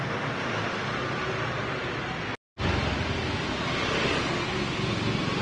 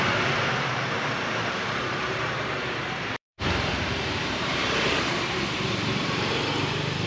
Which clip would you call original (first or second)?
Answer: first